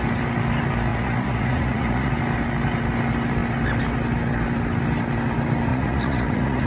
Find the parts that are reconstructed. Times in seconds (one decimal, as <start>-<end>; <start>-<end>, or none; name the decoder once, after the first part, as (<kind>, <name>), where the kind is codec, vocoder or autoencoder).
0.9-2.1 (vocoder, Vocos); 5.7-6.7